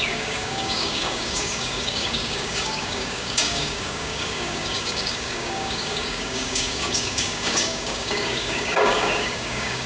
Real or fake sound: fake